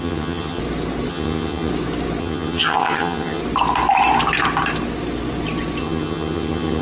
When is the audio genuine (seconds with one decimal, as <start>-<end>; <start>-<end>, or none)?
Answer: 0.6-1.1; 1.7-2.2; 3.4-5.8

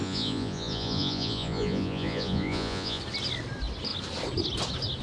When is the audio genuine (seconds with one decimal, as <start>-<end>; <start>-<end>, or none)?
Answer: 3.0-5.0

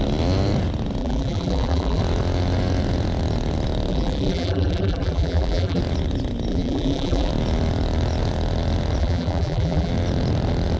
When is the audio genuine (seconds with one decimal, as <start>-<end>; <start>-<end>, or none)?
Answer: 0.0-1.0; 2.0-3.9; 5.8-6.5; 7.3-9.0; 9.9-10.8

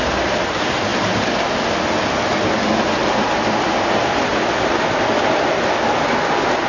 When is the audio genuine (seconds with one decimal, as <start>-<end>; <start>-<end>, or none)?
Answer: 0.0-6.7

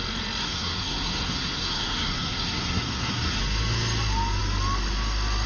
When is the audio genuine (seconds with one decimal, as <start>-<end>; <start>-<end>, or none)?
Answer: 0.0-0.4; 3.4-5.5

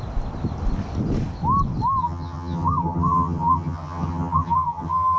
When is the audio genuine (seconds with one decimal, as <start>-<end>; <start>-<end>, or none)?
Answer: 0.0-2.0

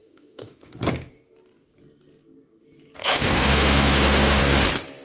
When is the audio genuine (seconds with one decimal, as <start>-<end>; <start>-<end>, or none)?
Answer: 0.7-3.0; 4.4-5.0

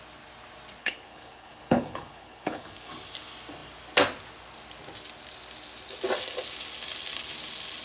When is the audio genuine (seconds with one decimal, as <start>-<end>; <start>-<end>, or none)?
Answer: 0.0-0.8; 2.9-7.8